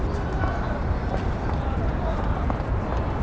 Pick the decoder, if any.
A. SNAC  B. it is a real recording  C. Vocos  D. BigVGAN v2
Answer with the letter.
B